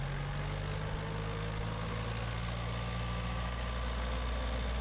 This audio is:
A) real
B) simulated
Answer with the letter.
A